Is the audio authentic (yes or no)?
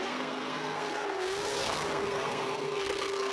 no